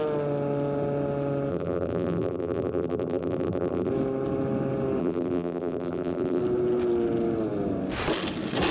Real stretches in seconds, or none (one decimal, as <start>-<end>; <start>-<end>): 0.0-1.5; 3.9-5.0; 6.4-8.7